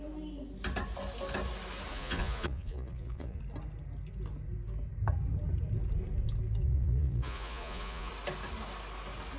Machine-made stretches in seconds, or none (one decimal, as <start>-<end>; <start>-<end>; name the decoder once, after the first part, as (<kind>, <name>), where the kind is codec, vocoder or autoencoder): 1.9-3.4 (vocoder, Vocos); 6.6-8.1